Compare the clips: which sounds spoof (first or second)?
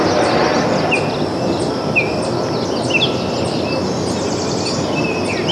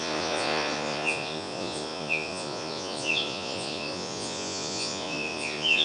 second